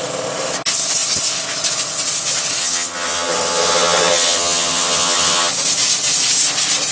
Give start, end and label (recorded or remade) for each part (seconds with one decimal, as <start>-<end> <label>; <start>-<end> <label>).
0.0-2.6 recorded; 2.6-5.5 remade; 5.5-6.9 recorded